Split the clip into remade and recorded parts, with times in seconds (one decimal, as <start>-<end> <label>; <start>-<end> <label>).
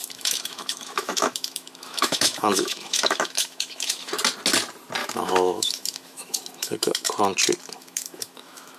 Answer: 0.0-4.1 remade; 4.1-5.0 recorded; 5.0-7.1 remade; 7.1-7.6 recorded; 7.6-8.8 remade